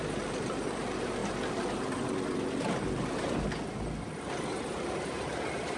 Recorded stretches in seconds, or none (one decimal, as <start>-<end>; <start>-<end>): 0.0-5.8